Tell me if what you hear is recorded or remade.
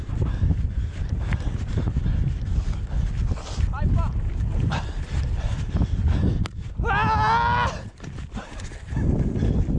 recorded